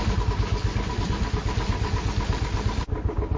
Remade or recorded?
recorded